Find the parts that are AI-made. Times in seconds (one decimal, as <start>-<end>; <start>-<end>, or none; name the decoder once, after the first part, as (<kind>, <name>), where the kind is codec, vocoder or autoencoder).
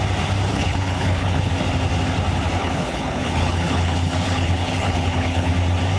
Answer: 0.5-1.5 (codec, HILCodec); 2.6-5.5